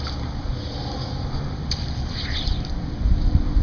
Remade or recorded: recorded